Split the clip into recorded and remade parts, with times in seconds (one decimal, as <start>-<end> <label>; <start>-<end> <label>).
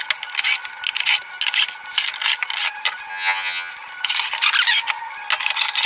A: 0.0-3.1 recorded; 3.1-3.7 remade; 3.7-5.9 recorded